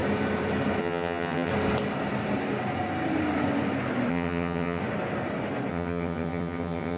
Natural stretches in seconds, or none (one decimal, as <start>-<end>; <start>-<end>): 0.0-0.8; 1.5-4.1; 4.8-5.7

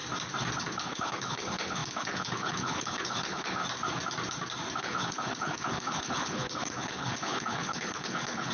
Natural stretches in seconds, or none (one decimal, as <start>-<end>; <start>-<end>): 0.0-0.6; 3.6-4.8

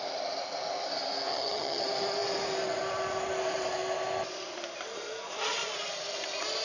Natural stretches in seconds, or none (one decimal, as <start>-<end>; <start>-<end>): 0.0-1.3; 1.8-6.6

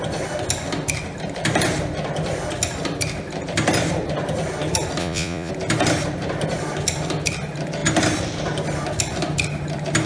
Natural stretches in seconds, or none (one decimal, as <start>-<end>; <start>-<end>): 0.0-5.0; 5.5-10.1

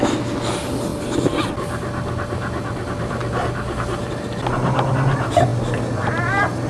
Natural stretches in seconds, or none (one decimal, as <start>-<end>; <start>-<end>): 0.0-6.7

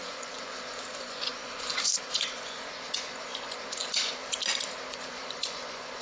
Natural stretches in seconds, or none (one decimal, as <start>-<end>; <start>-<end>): 4.2-4.9

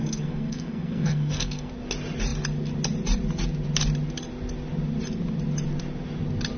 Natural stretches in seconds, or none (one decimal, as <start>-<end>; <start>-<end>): 1.7-6.6